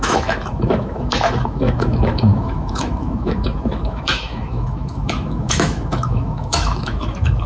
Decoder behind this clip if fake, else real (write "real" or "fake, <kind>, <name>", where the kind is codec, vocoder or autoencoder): fake, autoencoder, DAC-VAE